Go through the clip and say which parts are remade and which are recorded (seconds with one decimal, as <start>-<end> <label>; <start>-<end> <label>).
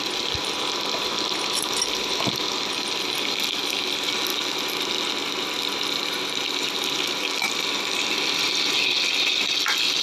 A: 0.0-10.0 recorded